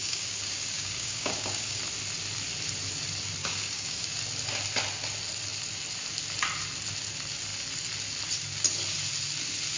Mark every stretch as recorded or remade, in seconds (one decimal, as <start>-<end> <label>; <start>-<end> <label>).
0.0-1.8 remade; 1.8-3.4 recorded; 3.4-4.1 remade; 4.1-9.8 recorded